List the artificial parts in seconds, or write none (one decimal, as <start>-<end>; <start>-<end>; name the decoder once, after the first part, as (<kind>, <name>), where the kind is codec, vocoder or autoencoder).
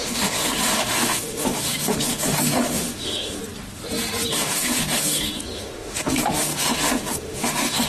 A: 0.0-3.4 (autoencoder, DAC-VAE); 4.3-7.9